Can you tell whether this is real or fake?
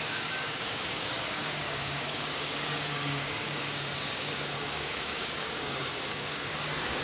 fake